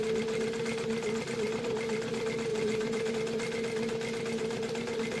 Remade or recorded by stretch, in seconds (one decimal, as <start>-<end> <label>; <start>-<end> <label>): 0.0-2.5 recorded; 2.5-3.1 remade; 3.1-5.2 recorded